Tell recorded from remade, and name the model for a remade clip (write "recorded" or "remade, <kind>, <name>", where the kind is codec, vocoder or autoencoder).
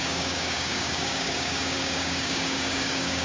remade, codec, DAC